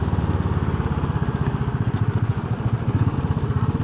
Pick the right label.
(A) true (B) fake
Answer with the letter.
A